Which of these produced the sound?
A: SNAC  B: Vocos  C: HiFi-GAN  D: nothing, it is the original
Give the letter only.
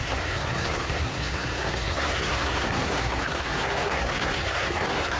A